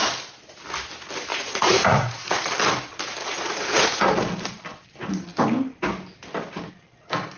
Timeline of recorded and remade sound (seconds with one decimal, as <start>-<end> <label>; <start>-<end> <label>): 0.0-1.3 recorded; 1.3-2.4 remade; 2.4-3.2 recorded; 3.2-4.1 remade; 4.1-7.4 recorded